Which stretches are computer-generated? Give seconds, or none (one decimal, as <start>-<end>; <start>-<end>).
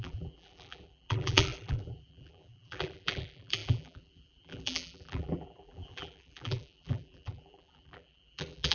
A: 0.0-8.7